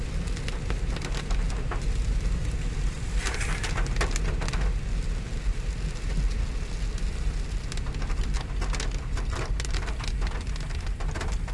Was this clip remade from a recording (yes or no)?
no